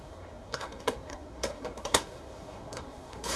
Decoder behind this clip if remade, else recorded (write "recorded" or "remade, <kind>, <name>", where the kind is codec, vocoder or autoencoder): remade, codec, SNAC